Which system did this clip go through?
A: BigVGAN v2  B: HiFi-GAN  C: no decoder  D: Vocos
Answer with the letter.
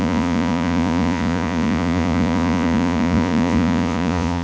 D